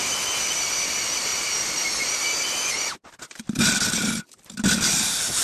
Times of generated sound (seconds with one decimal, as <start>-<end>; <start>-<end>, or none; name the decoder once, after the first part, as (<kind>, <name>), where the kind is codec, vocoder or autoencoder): none